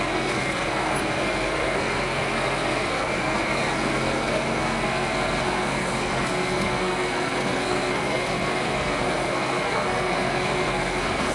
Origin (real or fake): fake